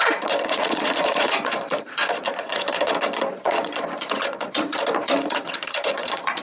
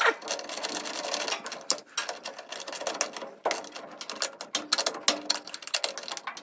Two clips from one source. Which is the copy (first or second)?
first